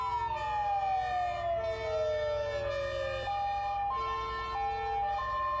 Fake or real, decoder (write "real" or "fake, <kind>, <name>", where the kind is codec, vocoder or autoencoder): real